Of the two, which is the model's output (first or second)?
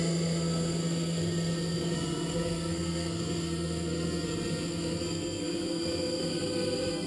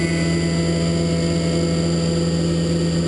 first